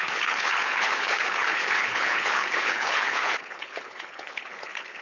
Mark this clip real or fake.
fake